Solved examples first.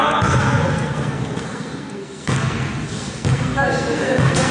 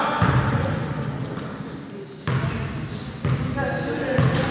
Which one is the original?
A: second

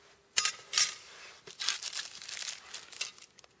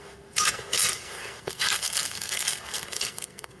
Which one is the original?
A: first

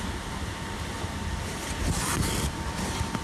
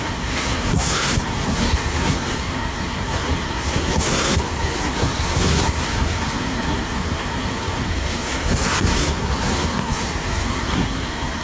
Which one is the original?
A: first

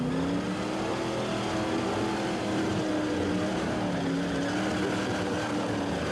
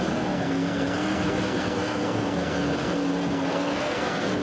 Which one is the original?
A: first